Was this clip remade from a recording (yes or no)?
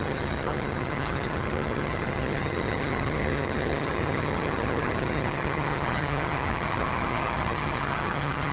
yes